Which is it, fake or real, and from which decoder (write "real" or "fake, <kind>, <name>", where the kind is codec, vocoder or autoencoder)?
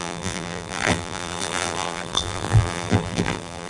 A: fake, vocoder, BigVGAN v2